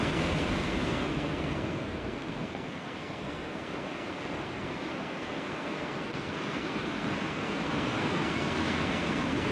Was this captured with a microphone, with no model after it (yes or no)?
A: no